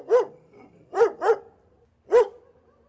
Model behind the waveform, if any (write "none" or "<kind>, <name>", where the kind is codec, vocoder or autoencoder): none